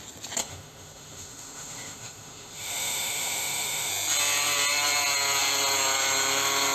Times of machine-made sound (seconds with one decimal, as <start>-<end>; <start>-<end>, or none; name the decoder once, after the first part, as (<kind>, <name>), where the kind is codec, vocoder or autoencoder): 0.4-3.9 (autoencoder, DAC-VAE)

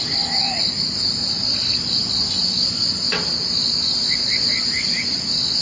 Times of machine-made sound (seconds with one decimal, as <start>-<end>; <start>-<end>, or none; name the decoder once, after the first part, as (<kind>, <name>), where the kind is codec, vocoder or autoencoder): none

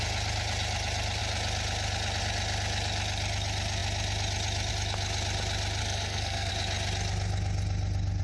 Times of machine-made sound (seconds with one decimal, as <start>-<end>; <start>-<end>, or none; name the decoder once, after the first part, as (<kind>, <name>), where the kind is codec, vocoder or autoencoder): 5.8-6.5 (codec, SNAC)